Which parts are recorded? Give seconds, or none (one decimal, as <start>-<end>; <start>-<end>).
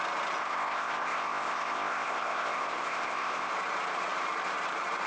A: 0.0-0.4; 3.5-5.1